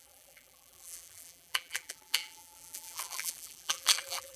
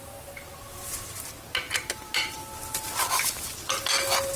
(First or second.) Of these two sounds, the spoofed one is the first